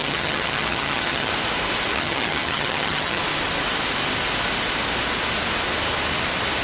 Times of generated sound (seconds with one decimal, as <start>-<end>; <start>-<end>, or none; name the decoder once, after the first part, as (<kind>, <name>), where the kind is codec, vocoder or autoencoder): 0.0-1.3 (vocoder, HiFi-GAN); 1.9-3.2